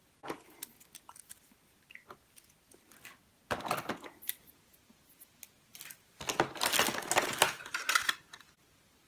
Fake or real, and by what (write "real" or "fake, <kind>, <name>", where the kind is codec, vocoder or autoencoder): real